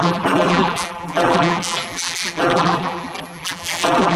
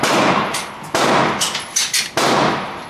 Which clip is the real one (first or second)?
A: second